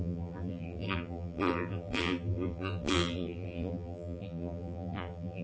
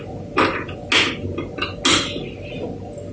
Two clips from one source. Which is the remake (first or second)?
first